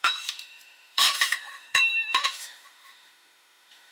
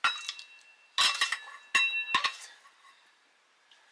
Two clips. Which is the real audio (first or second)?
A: second